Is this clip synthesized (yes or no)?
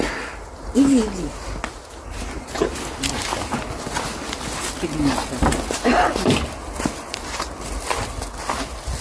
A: no